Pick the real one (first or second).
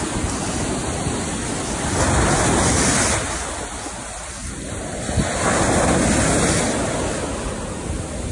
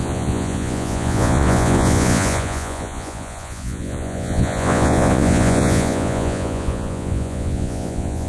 first